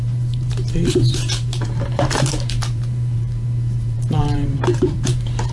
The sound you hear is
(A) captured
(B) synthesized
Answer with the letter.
B